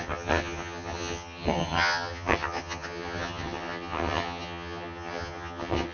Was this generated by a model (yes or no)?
yes